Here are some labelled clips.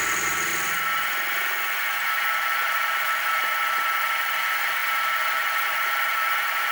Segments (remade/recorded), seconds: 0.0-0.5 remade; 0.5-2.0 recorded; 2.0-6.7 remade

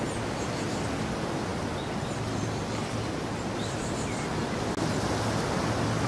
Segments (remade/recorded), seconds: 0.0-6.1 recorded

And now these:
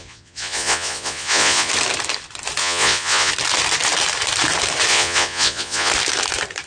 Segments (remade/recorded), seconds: 0.0-1.7 remade; 1.7-2.6 recorded; 2.6-3.3 remade; 3.3-4.9 recorded; 4.9-5.9 remade; 5.9-6.7 recorded

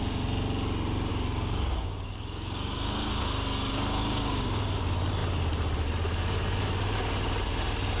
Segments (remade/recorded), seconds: 0.0-1.1 recorded; 1.1-3.2 remade; 3.2-3.7 recorded; 3.7-4.8 remade; 4.8-8.0 recorded